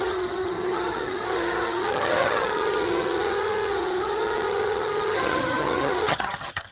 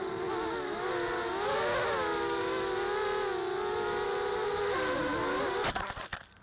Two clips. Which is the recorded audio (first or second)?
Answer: second